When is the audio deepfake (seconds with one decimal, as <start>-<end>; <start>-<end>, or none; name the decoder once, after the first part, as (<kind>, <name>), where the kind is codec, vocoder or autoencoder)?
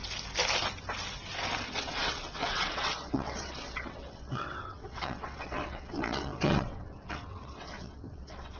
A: 1.7-8.6 (vocoder, WaveNeXt)